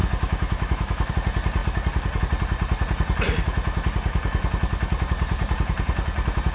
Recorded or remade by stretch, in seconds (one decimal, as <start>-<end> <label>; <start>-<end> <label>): 0.0-1.1 remade; 1.1-6.5 recorded

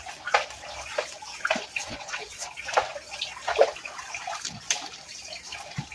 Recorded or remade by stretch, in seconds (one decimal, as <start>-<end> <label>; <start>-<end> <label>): 0.0-1.8 recorded; 1.8-2.5 remade; 2.5-5.9 recorded

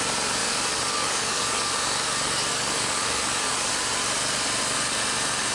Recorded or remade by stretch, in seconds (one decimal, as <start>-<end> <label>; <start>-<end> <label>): 0.0-0.4 recorded; 0.4-3.7 remade; 3.7-5.5 recorded

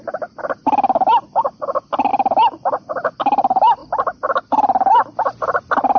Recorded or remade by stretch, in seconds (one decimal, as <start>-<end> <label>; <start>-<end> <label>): 0.0-6.0 recorded

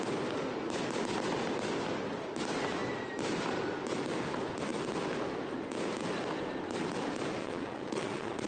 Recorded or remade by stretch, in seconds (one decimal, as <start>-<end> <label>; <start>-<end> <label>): 0.0-7.4 recorded; 7.4-8.5 remade